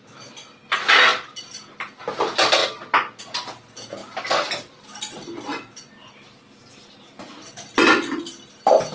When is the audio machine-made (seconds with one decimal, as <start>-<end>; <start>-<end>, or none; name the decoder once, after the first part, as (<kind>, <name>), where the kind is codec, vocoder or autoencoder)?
none